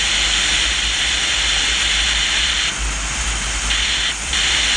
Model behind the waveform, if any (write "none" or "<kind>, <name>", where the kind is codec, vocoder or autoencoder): none